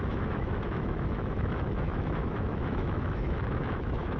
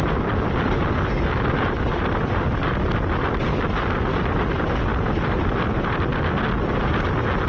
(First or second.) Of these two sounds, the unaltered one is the second